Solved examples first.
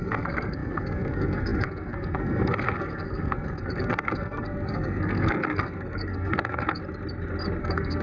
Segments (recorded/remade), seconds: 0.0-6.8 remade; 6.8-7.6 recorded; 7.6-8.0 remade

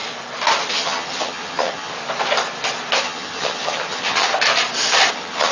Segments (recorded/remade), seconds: 0.0-0.7 recorded; 0.7-1.9 remade; 1.9-3.0 recorded; 3.0-4.3 remade; 4.3-5.1 recorded; 5.1-5.5 remade

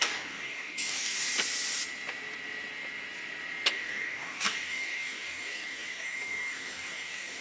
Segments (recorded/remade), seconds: 0.0-1.3 remade; 1.3-3.7 recorded; 3.7-7.4 remade

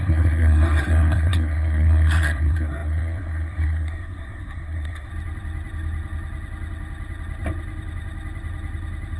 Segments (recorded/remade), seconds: 0.0-5.1 remade; 5.1-9.2 recorded

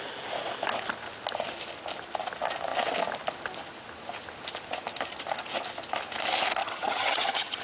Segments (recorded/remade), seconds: 0.0-6.6 recorded; 6.6-7.6 remade

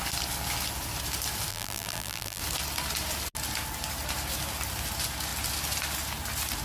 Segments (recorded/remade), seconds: 0.0-1.5 recorded; 1.5-2.4 remade; 2.4-6.6 recorded

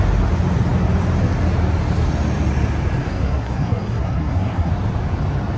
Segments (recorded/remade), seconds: 0.0-3.0 recorded; 3.0-4.7 remade; 4.7-5.6 recorded

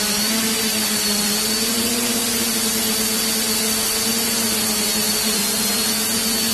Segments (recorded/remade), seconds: 0.0-6.5 recorded